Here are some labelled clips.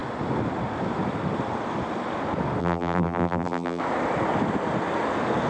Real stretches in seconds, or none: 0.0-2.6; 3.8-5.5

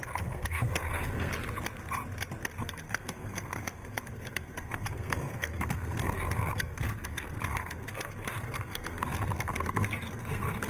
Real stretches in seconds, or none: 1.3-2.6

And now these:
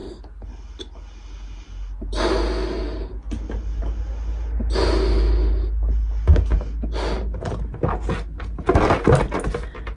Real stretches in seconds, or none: 0.0-10.0